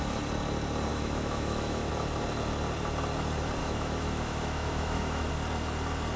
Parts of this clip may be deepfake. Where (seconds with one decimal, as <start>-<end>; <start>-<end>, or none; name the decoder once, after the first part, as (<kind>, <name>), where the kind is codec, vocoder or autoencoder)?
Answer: 0.9-1.9 (autoencoder, DAC-VAE); 3.6-5.3